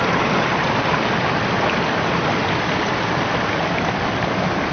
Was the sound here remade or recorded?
recorded